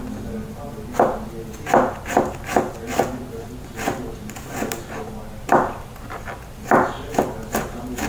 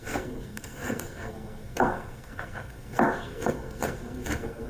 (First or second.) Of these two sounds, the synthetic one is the second